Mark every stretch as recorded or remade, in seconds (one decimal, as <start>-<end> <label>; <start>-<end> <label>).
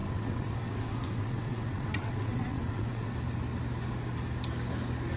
0.0-3.1 remade; 3.1-5.2 recorded